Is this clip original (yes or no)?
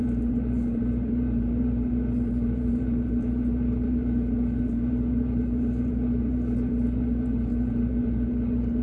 no